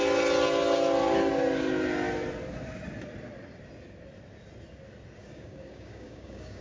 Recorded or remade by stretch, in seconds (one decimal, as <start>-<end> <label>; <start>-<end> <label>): 0.0-5.2 recorded; 5.2-6.6 remade